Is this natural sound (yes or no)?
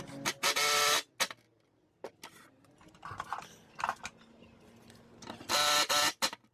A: yes